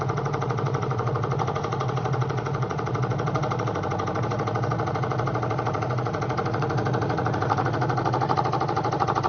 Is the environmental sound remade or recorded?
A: remade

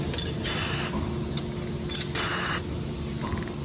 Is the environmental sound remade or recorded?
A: recorded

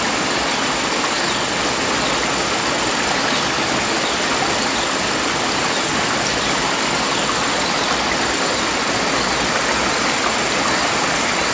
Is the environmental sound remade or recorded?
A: recorded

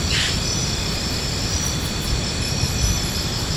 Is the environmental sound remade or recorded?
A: recorded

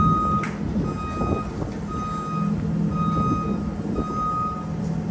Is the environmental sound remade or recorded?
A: recorded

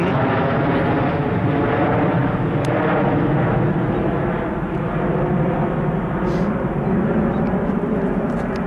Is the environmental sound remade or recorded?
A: recorded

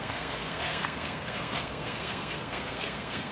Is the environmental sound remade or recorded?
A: remade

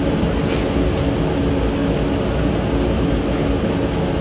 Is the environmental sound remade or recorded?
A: recorded